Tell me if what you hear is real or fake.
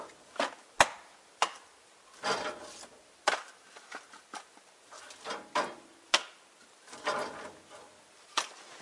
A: real